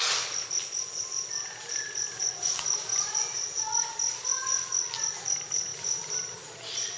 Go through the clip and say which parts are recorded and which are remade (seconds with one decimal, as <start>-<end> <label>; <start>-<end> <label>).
0.0-2.9 recorded; 2.9-3.6 remade; 3.6-5.7 recorded; 5.7-7.0 remade